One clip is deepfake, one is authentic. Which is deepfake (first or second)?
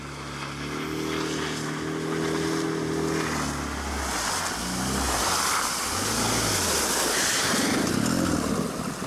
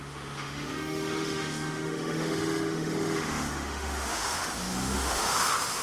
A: second